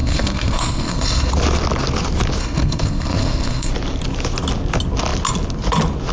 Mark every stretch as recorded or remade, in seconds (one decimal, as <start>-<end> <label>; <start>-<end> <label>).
0.0-1.3 remade; 1.3-2.4 recorded; 2.4-3.7 remade; 3.7-6.1 recorded